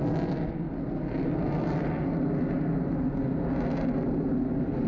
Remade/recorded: recorded